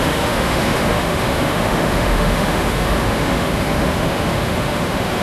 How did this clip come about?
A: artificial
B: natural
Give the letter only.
A